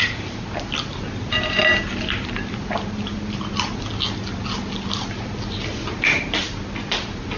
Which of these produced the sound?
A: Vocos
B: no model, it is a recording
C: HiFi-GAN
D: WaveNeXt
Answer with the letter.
B